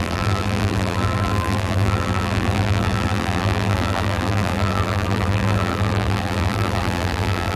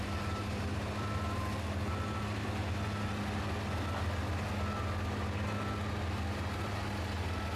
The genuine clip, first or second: second